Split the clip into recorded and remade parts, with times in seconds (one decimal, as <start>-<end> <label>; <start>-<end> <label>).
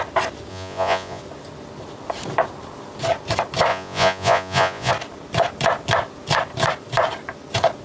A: 0.0-0.5 recorded; 0.5-1.2 remade; 1.2-3.7 recorded; 3.7-4.9 remade; 4.9-7.8 recorded